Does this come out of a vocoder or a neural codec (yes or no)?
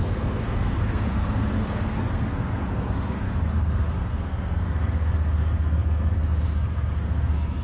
yes